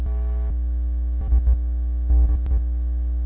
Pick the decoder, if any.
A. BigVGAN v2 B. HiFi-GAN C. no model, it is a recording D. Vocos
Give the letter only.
C